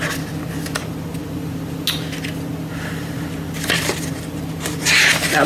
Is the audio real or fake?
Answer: real